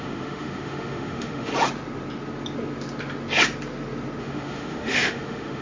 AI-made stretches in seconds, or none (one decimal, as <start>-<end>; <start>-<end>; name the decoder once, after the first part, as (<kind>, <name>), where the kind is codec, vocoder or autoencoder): 0.0-1.5 (autoencoder, DAC-VAE); 4.2-5.6